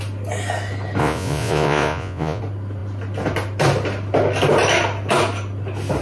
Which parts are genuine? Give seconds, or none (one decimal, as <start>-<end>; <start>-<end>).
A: 0.0-1.0; 2.4-6.0